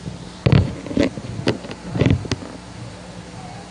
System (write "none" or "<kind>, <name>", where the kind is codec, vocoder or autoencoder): none